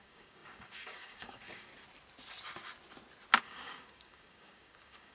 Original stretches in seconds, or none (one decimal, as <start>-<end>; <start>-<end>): 1.7-3.4